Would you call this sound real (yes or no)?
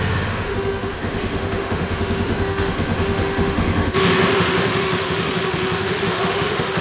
no